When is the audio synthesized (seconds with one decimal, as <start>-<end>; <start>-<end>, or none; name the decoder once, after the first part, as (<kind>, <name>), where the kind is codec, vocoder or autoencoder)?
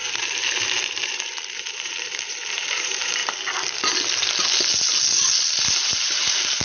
0.0-3.2 (vocoder, BigVGAN v2); 5.7-6.6